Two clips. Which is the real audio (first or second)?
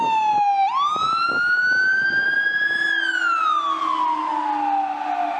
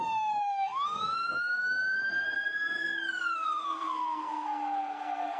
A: first